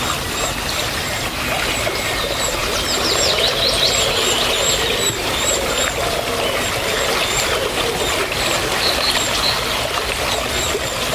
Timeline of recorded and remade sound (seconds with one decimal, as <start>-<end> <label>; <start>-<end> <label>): 0.0-11.1 recorded